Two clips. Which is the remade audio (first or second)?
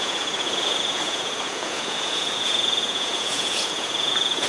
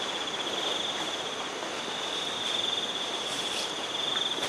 first